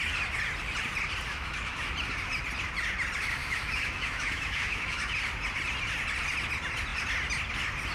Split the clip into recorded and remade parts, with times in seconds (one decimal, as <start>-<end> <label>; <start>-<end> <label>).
0.0-1.3 recorded; 1.3-1.9 remade; 1.9-3.4 recorded; 3.4-5.1 remade; 5.1-7.9 recorded